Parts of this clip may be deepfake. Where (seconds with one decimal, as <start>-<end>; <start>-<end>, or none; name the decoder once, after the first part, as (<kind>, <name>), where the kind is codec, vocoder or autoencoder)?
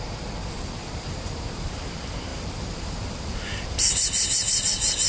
0.4-1.9 (vocoder, BigVGAN v2); 2.3-3.3